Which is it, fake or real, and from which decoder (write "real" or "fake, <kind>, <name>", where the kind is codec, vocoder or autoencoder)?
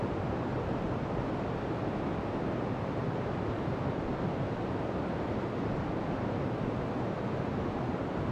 real